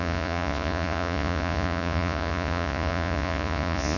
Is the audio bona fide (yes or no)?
no